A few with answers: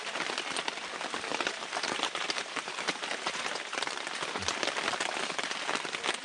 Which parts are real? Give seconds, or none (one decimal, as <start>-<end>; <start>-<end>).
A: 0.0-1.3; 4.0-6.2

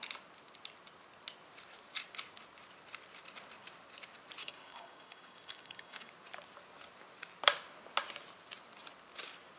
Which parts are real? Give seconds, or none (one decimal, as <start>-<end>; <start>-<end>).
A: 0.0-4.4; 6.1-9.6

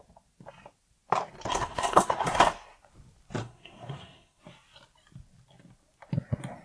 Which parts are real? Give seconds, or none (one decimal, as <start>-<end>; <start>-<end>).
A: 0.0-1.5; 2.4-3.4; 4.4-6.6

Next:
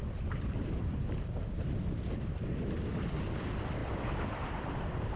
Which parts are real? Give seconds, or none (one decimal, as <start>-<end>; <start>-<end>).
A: 1.9-3.8; 4.8-5.2

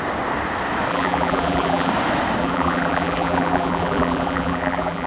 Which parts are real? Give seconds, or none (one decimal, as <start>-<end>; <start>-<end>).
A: 0.0-0.9; 1.9-2.4

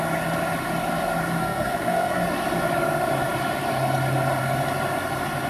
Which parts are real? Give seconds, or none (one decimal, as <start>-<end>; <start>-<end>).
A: 0.0-1.4; 2.2-5.5